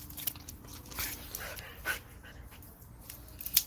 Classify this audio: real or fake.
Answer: real